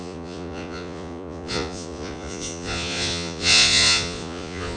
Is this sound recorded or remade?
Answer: remade